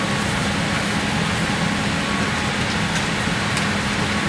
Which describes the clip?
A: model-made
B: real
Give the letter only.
B